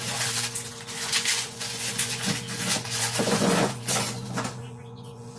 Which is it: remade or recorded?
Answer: remade